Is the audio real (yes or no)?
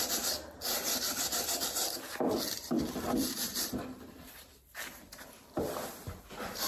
no